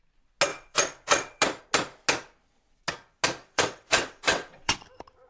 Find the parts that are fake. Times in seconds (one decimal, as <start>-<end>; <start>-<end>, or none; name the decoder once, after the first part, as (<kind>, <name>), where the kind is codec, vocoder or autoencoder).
0.5-1.4 (vocoder, WaveNeXt); 3.4-4.8